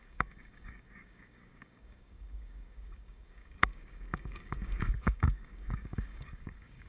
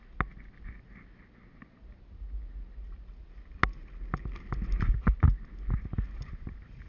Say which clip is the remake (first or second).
first